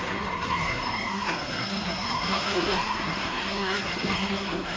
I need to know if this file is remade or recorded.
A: remade